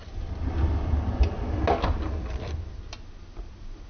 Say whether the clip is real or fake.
real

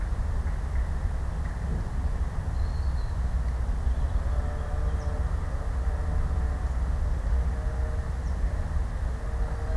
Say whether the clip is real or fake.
real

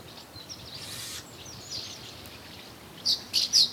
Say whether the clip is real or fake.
real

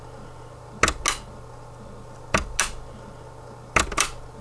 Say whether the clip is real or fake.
real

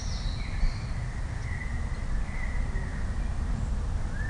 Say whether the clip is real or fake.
fake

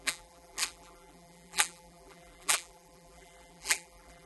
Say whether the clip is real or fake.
fake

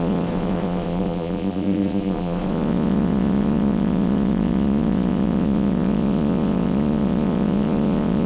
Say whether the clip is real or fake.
fake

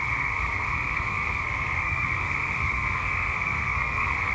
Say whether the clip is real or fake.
fake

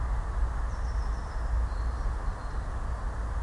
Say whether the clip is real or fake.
real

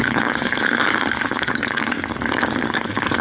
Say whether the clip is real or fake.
fake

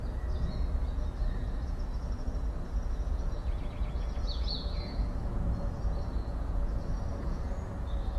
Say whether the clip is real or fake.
fake